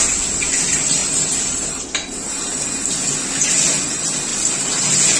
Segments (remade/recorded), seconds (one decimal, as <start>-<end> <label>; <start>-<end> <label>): 0.0-1.0 recorded; 1.0-2.4 remade; 2.4-5.2 recorded